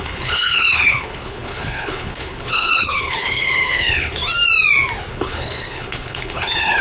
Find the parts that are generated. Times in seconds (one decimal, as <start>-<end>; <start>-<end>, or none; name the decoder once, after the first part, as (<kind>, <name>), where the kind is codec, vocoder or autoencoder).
0.0-4.2 (codec, HILCodec); 5.1-6.8